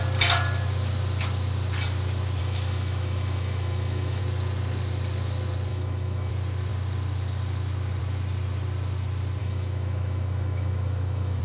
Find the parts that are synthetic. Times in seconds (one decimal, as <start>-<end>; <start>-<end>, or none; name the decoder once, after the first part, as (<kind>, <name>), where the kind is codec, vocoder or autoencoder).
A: 2.4-4.2 (autoencoder, DAC-VAE); 5.7-6.3; 9.4-11.4